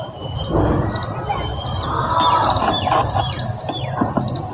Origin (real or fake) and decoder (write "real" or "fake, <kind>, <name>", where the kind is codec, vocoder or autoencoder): real